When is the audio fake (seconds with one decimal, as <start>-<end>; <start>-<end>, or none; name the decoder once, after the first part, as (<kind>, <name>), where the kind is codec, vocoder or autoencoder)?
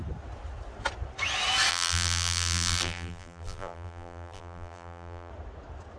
1.7-5.3 (vocoder, BigVGAN v2)